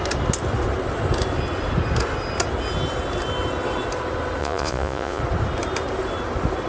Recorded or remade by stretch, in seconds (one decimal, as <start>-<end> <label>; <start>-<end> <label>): 0.0-4.4 recorded; 4.4-5.2 remade; 5.2-6.7 recorded